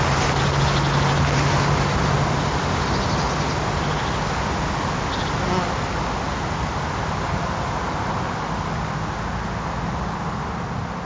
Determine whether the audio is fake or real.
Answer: real